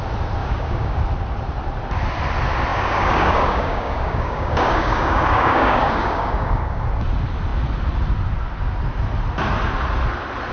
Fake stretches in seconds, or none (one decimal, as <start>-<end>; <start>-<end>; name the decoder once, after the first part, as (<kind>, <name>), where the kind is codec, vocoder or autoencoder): 0.4-1.0 (codec, DAC); 2.7-6.8